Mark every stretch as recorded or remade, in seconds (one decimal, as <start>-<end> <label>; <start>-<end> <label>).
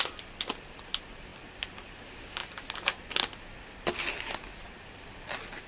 0.0-5.7 recorded